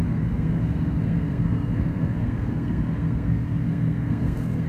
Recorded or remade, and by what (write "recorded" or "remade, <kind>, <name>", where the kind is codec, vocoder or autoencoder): remade, codec, SNAC